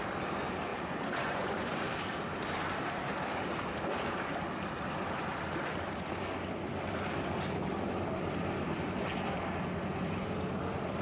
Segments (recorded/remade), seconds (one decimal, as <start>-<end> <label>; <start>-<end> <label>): 0.0-0.7 recorded; 0.7-1.7 remade; 1.7-11.0 recorded